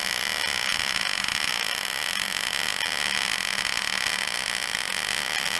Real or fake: real